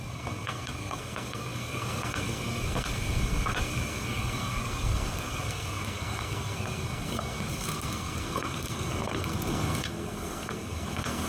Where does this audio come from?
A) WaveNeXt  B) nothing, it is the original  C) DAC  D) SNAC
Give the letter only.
D